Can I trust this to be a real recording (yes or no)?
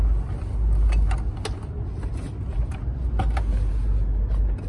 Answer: yes